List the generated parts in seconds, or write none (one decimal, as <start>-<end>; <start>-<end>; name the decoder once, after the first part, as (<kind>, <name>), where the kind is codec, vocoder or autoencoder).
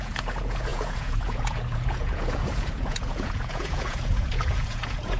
0.0-5.2 (vocoder, Vocos)